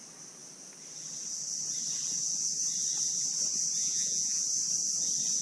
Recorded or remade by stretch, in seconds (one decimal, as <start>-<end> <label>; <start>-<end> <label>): 0.0-3.8 recorded; 3.8-4.4 remade; 4.4-5.4 recorded